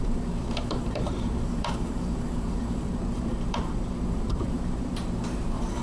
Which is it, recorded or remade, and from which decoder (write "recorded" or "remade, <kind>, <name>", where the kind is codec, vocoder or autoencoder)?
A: remade, vocoder, BigVGAN v2